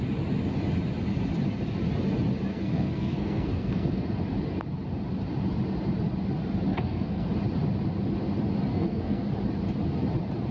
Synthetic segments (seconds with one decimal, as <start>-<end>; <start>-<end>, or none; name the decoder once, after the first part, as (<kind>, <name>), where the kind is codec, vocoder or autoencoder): 2.5-4.0 (codec, SNAC); 6.7-7.3; 8.7-9.3